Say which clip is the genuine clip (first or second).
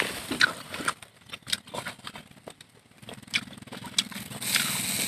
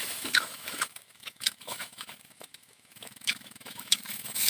first